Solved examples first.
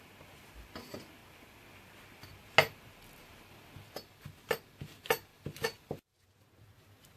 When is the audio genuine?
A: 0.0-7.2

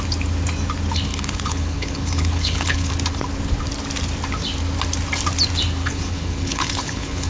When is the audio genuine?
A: 0.0-1.1; 2.9-5.8

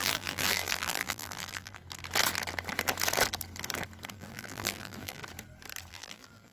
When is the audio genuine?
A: 1.8-4.1; 5.2-5.9

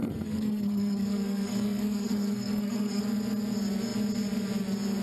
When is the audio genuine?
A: 3.0-5.0

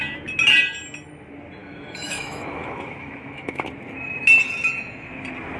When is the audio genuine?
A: 0.0-1.6; 3.7-5.6

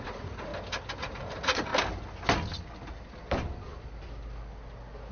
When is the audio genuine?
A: 0.5-1.0; 1.7-5.1

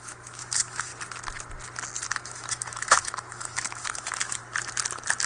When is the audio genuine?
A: 0.9-2.1; 4.4-5.3